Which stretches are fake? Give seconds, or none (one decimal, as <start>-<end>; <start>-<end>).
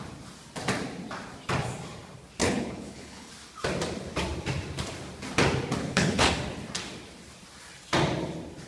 2.4-3.3; 5.8-6.3